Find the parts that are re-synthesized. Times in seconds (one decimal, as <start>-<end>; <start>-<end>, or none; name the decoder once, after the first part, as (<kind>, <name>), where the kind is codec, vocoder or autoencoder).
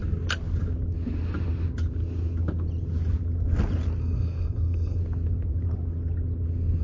4.0-5.0 (codec, SNAC)